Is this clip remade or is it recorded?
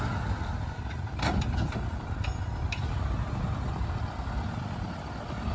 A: recorded